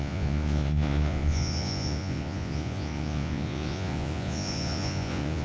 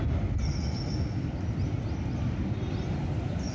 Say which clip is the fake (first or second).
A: first